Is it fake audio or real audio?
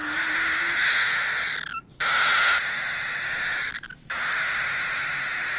real